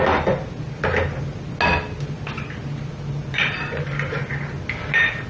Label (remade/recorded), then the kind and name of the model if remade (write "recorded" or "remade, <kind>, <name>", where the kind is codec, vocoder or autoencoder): recorded